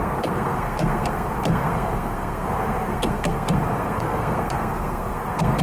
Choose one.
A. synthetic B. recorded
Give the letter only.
A